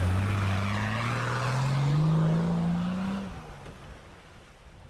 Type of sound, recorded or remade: recorded